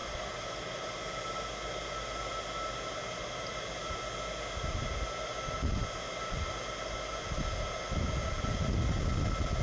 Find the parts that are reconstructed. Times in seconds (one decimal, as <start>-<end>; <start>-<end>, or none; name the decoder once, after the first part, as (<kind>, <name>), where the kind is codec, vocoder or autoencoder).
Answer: 0.0-0.9 (vocoder, BigVGAN v2)